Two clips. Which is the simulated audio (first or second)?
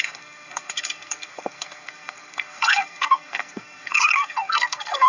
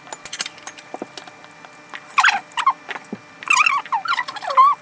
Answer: first